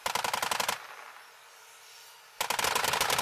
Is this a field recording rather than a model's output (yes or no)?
yes